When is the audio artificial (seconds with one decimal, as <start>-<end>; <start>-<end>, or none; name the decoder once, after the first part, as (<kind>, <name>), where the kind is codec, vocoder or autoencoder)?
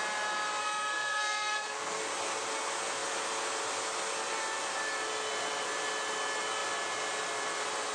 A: 0.6-2.0 (codec, SNAC)